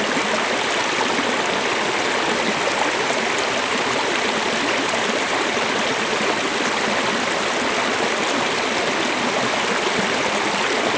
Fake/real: real